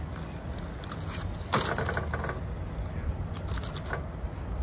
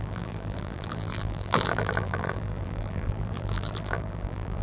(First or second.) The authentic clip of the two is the first